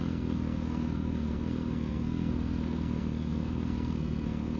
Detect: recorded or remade remade